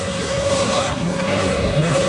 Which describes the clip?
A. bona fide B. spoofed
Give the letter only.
B